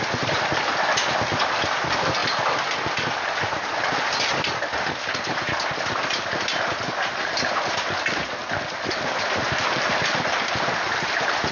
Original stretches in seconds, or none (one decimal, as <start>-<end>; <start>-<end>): 0.0-11.5